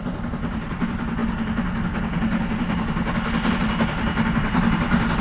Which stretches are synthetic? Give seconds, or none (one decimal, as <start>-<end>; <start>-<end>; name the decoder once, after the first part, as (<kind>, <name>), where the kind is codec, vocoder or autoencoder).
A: none